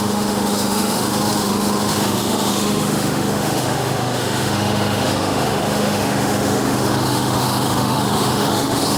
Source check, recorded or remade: remade